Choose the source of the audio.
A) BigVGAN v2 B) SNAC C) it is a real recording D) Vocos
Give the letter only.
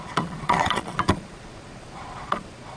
D